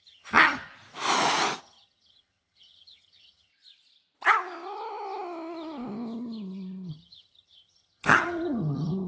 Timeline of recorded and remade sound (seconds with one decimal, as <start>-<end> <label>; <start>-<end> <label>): 0.0-0.7 remade; 0.7-1.6 recorded; 1.6-3.5 remade; 3.5-6.9 recorded; 6.9-9.1 remade